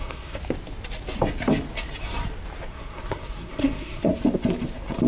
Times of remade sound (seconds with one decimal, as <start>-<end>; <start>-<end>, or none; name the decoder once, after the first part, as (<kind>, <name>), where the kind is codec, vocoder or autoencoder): 0.0-0.4 (codec, SNAC); 2.7-4.1